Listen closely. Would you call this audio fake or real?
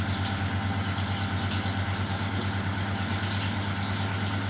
real